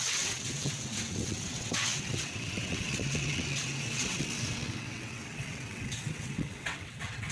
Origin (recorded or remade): remade